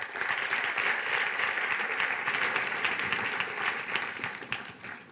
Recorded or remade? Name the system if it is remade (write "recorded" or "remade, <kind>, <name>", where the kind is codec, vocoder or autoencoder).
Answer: recorded